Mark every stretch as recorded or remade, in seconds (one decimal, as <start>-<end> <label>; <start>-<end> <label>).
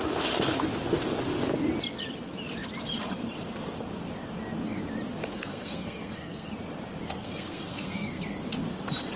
0.0-5.3 recorded; 5.3-6.5 remade; 6.5-7.2 recorded; 7.2-8.2 remade; 8.2-9.2 recorded